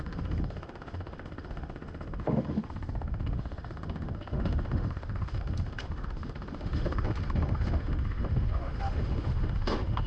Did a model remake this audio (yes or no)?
yes